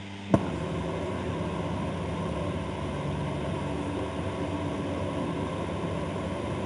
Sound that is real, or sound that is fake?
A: real